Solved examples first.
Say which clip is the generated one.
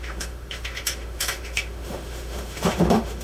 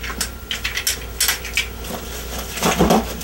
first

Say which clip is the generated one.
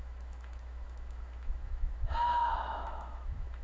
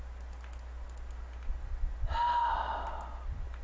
first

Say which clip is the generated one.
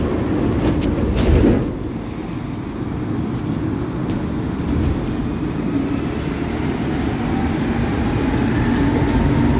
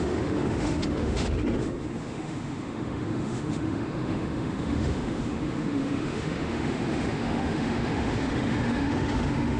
second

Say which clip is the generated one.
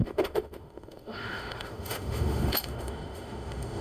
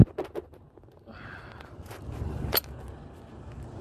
first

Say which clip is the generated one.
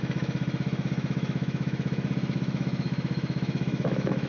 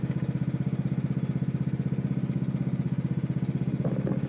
first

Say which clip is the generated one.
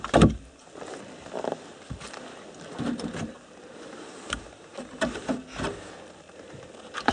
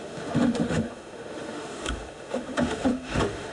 second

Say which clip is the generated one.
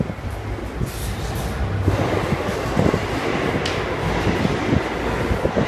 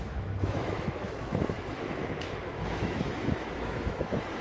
second